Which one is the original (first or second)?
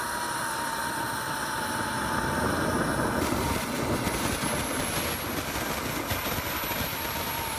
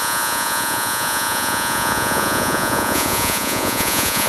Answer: first